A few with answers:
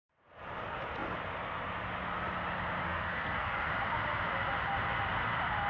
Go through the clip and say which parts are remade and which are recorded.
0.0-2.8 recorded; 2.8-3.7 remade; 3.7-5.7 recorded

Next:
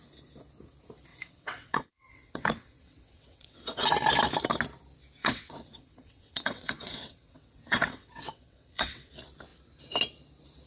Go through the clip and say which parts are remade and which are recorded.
0.0-1.1 recorded; 1.1-3.9 remade; 3.9-5.2 recorded; 5.2-9.1 remade; 9.1-10.7 recorded

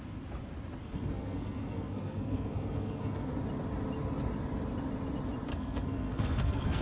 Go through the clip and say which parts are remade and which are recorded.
0.0-0.8 recorded; 0.8-3.3 remade; 3.3-5.5 recorded; 5.5-6.8 remade

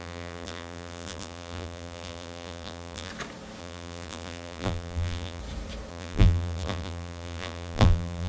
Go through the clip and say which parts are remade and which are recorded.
0.0-3.1 remade; 3.1-3.6 recorded; 3.6-5.4 remade; 5.4-5.9 recorded; 5.9-8.3 remade

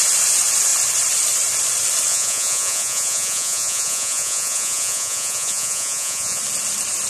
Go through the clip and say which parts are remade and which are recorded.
0.0-2.1 recorded; 2.1-6.4 remade; 6.4-7.1 recorded